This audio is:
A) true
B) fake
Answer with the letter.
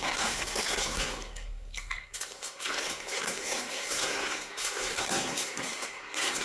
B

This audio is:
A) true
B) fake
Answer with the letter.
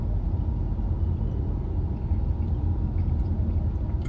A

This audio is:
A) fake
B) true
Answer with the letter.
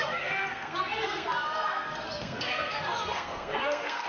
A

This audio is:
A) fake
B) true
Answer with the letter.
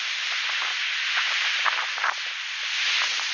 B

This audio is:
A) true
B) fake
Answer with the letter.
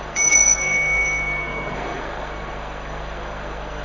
B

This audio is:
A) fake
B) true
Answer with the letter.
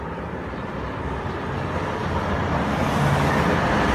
B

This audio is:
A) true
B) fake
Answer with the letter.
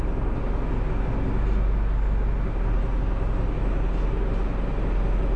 A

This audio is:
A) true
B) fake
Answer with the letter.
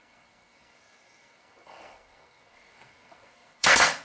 B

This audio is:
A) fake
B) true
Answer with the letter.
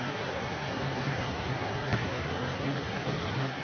A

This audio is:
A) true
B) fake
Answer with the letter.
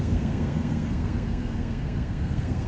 B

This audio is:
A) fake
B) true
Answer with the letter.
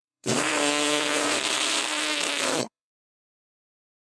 A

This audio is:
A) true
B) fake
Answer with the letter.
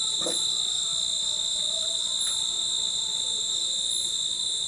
A